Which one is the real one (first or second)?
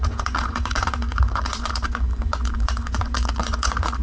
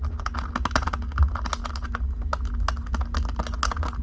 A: second